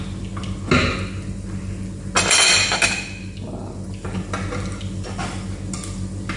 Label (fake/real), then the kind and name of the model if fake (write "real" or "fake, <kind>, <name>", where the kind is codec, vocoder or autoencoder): real